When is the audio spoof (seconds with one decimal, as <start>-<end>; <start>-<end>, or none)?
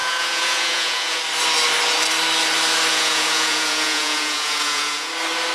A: 0.0-1.2; 2.9-5.1